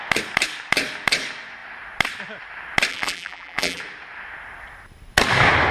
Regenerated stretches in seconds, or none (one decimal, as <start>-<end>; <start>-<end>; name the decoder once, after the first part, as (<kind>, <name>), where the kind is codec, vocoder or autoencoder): 2.9-3.8 (vocoder, BigVGAN v2)

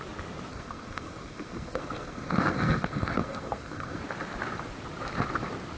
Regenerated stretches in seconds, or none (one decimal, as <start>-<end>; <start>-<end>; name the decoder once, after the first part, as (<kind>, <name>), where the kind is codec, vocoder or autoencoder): 0.5-4.0 (codec, SNAC)

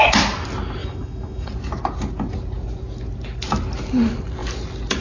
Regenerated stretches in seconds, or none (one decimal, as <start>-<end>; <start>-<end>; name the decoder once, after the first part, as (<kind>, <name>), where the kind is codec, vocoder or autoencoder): 0.8-1.5 (autoencoder, DAC-VAE)

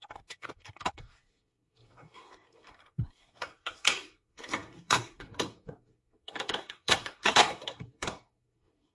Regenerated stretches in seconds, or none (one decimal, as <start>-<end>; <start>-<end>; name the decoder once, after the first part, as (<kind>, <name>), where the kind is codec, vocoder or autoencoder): 0.0-8.9 (codec, SNAC)